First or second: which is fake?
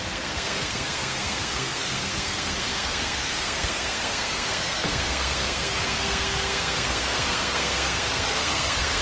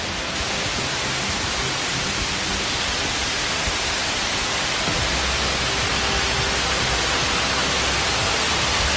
first